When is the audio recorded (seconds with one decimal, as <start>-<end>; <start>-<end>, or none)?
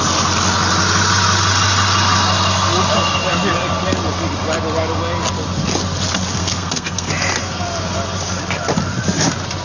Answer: 0.0-6.4; 7.1-9.6